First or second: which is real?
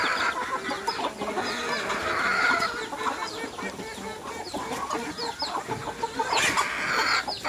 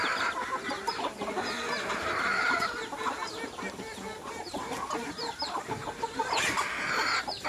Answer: first